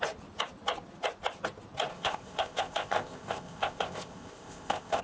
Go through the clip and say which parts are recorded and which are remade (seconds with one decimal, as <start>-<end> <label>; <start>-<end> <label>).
0.0-1.9 recorded; 1.9-5.0 remade